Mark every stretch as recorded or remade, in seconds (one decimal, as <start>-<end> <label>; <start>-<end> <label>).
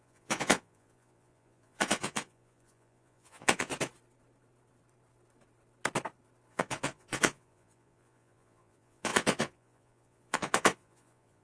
0.0-3.7 remade; 3.7-6.5 recorded; 6.5-11.4 remade